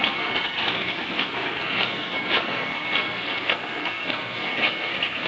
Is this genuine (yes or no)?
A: no